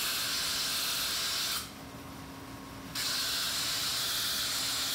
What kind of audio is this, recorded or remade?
recorded